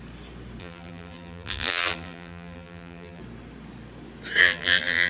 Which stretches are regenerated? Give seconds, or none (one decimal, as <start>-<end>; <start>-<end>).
0.6-3.2; 4.4-5.1